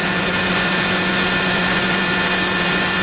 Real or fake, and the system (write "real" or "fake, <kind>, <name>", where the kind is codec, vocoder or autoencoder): fake, vocoder, Vocos